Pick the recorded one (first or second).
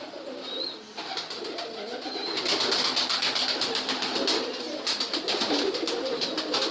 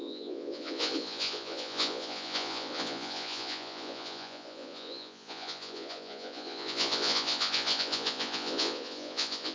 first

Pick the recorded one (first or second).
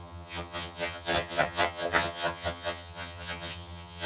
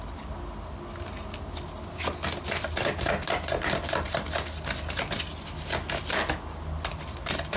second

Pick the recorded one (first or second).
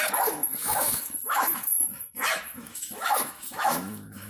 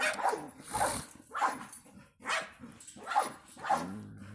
second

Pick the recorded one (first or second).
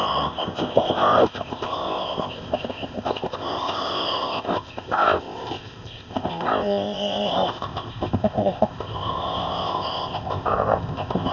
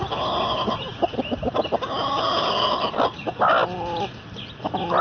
second